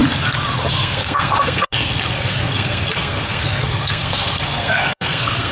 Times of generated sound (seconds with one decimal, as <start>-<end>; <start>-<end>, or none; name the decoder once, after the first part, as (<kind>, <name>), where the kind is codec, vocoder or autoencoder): 0.7-5.5 (codec, SNAC)